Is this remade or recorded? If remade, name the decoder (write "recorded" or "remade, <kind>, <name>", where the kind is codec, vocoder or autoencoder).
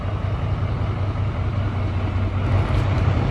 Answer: recorded